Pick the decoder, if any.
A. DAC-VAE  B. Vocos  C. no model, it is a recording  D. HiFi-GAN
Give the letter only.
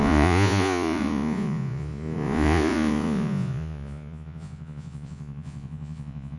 B